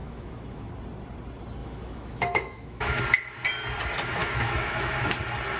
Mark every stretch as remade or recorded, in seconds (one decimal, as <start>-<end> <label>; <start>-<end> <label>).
0.0-0.7 remade; 0.7-1.6 recorded; 1.6-3.0 remade; 3.0-4.2 recorded; 4.2-5.1 remade; 5.1-5.6 recorded